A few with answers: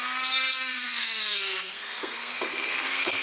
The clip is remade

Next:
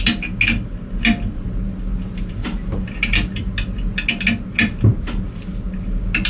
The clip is recorded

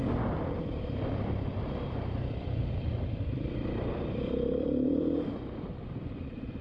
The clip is remade